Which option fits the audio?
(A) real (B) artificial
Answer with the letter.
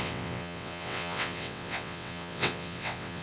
B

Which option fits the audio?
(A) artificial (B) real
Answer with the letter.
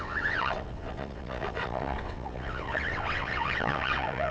A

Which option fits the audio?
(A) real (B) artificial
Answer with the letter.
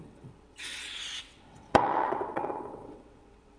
B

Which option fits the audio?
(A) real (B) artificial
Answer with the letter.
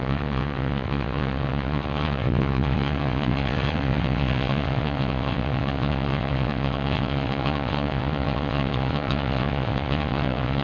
B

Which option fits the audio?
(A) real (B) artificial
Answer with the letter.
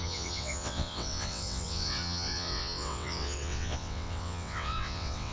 B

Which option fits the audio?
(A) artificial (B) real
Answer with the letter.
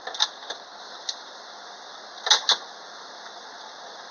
B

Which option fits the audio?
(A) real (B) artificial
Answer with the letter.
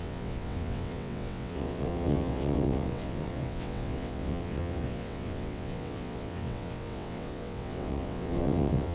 B